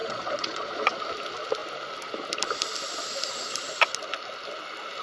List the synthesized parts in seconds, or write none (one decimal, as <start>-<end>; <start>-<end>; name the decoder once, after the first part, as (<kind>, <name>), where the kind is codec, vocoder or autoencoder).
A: 0.0-1.0 (vocoder, Vocos)